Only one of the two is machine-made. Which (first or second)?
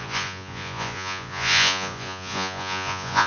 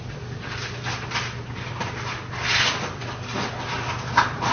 first